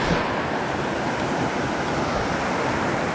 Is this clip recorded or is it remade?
recorded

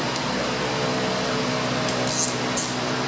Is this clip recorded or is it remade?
recorded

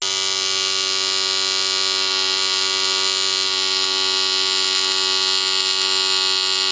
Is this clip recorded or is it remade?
recorded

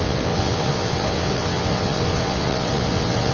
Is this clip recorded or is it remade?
remade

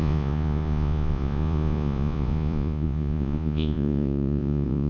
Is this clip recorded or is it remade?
remade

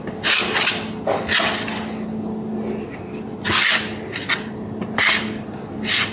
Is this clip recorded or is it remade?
recorded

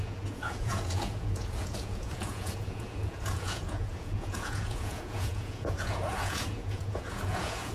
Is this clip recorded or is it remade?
remade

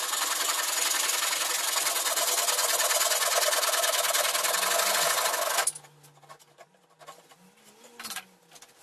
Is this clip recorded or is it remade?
recorded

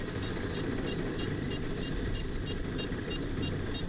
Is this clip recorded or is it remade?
remade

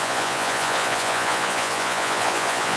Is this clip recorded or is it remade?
remade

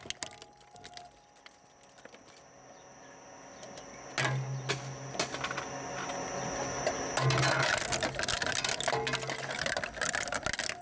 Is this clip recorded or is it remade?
recorded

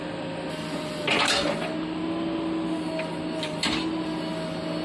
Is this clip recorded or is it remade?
recorded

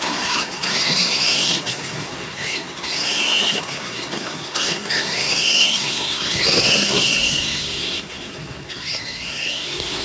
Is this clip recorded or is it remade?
remade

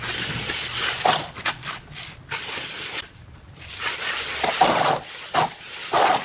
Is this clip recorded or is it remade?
recorded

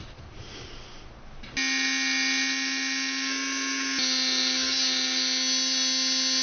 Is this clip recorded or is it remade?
recorded